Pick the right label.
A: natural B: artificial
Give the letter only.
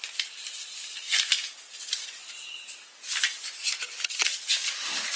A